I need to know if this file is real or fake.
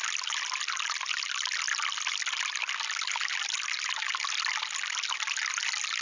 real